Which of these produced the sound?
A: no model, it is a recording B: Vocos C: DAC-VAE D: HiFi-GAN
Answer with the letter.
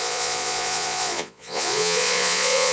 B